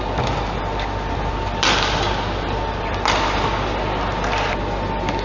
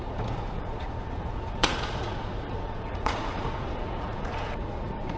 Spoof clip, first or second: second